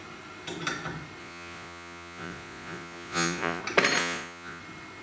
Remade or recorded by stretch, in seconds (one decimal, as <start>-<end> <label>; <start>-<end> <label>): 0.0-1.2 recorded; 1.2-3.6 remade; 3.6-4.0 recorded; 4.0-4.6 remade; 4.6-5.0 recorded